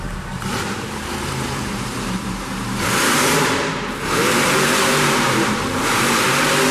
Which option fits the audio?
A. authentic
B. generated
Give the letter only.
B